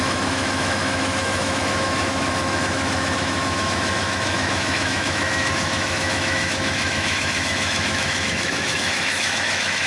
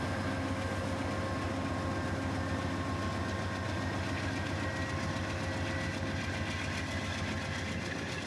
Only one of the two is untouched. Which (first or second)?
second